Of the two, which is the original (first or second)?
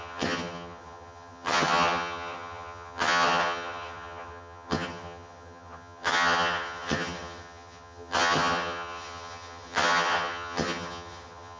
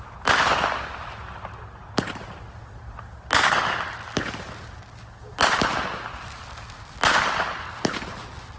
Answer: second